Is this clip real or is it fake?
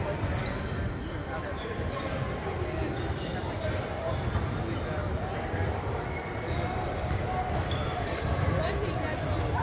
real